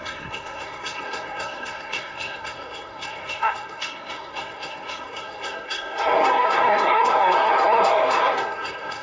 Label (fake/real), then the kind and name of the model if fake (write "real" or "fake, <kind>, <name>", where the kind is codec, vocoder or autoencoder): fake, codec, SNAC